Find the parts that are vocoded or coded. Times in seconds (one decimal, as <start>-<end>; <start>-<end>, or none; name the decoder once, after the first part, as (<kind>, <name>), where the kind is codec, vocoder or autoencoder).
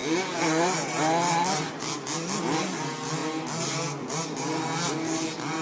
none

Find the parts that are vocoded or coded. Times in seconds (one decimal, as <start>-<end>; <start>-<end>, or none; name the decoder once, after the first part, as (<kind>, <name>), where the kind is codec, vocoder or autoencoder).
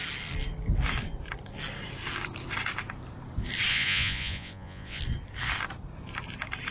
3.7-5.0 (vocoder, Vocos)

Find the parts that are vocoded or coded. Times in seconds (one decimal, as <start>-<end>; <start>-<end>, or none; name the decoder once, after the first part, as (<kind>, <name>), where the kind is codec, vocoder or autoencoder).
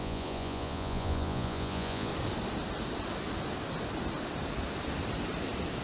0.0-2.1 (vocoder, Vocos)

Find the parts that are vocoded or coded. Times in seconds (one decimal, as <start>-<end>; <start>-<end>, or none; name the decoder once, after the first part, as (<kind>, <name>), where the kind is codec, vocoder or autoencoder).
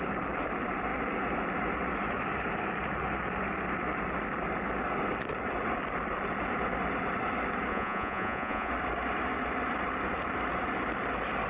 7.7-8.7 (vocoder, Vocos)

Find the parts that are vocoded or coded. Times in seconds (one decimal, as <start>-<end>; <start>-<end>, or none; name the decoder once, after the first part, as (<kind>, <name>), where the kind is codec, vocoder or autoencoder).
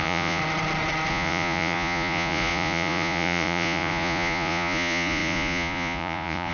0.0-0.4 (vocoder, Vocos); 1.1-6.5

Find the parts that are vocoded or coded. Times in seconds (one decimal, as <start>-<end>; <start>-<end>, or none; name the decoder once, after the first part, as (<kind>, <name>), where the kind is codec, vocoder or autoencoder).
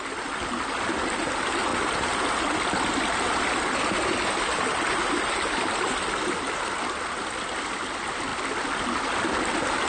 none